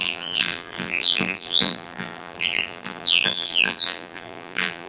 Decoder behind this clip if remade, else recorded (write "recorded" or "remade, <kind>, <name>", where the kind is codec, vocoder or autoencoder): remade, vocoder, BigVGAN v2